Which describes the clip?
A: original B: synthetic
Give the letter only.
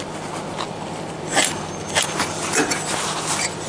A